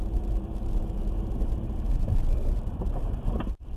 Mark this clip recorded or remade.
remade